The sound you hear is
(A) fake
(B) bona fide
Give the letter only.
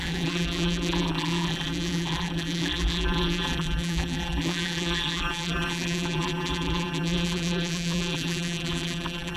A